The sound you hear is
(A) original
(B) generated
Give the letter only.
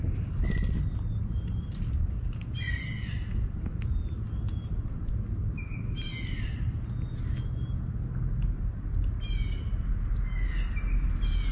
A